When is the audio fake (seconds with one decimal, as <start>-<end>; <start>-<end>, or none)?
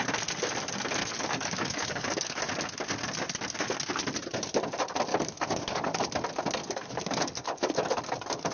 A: 1.0-2.4; 5.1-6.0; 6.6-8.0